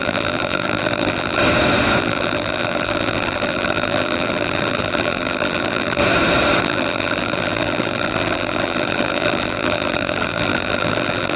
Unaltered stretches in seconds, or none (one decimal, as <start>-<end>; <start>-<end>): 1.4-2.0; 6.0-6.6